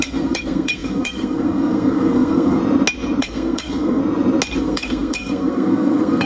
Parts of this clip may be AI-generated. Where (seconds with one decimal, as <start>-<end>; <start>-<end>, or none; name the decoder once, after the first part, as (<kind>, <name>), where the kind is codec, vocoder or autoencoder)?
0.0-2.6 (codec, SNAC); 3.2-4.0; 4.6-6.3

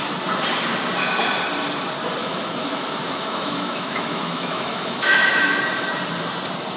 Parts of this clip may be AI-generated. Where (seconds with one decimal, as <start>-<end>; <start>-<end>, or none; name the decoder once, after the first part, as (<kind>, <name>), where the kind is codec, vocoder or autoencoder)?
2.2-5.6 (autoencoder, DAC-VAE)

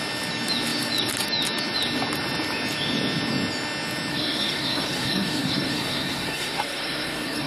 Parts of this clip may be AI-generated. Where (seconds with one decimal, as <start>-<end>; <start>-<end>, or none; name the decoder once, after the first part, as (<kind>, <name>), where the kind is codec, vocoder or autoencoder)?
4.1-7.5 (codec, SNAC)

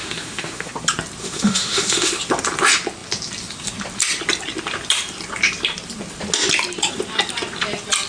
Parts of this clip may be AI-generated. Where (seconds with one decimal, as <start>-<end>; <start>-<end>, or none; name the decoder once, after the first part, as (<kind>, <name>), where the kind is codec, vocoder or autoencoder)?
0.0-0.7 (autoencoder, DAC-VAE); 1.2-2.2

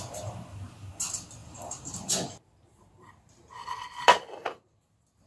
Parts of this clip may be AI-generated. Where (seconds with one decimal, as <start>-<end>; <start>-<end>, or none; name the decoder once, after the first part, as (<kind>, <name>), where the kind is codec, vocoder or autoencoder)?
1.4-4.2 (vocoder, BigVGAN v2)